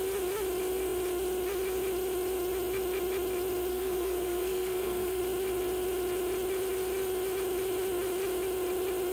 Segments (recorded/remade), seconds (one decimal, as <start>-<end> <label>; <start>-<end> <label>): 0.0-3.7 recorded; 3.7-5.2 remade; 5.2-9.1 recorded

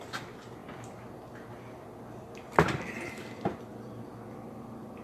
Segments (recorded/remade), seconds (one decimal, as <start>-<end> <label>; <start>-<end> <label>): 0.0-5.0 recorded